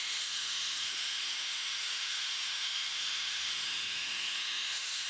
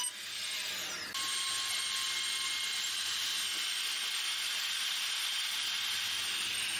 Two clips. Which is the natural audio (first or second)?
second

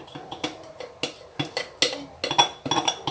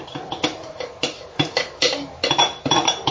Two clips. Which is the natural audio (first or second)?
first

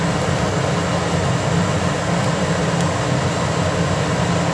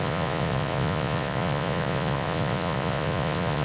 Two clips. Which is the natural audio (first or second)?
first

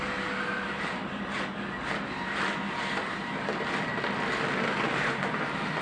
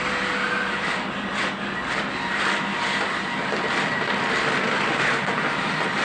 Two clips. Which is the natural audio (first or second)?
first